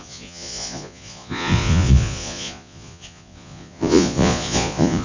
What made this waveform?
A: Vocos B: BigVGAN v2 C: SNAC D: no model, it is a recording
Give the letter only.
A